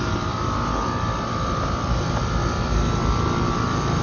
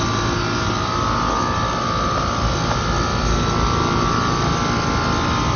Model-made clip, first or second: first